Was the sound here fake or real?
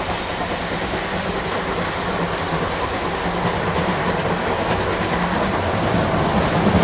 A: real